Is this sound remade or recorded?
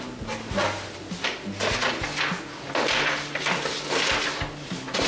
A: recorded